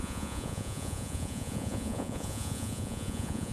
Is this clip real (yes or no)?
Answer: no